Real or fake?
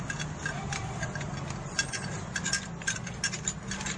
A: real